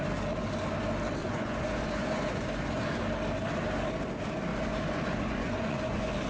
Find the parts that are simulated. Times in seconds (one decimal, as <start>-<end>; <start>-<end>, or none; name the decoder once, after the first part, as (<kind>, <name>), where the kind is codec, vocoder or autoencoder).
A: 1.2-2.8 (vocoder, Vocos); 4.5-6.3